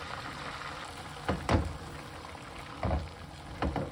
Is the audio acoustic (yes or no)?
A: yes